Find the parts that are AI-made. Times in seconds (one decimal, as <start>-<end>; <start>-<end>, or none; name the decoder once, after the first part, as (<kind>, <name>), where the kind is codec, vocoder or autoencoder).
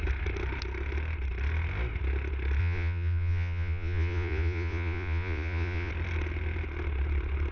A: 2.6-5.9 (vocoder, Vocos)